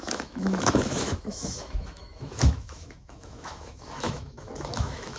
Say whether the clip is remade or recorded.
remade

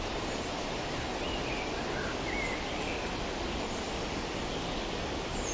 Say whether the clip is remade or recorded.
recorded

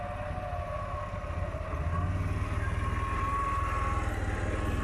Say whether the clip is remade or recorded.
recorded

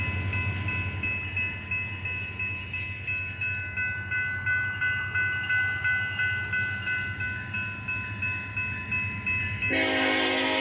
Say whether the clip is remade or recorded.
recorded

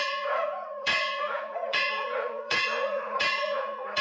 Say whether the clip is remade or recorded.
remade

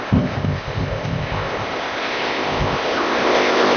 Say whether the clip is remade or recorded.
remade